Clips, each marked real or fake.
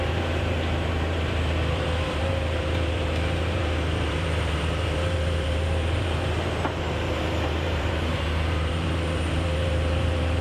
fake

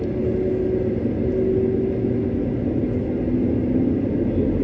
real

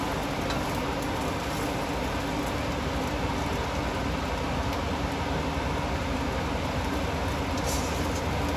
real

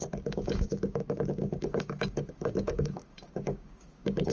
fake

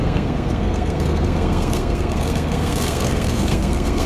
fake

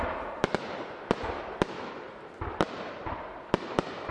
fake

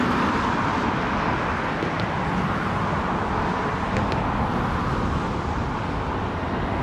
real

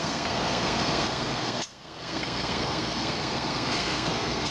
fake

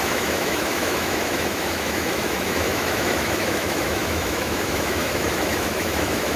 fake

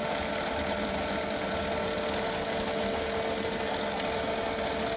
real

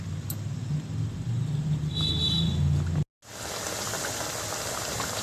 real